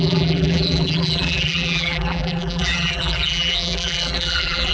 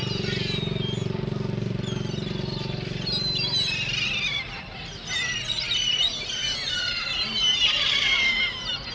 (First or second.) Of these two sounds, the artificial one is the first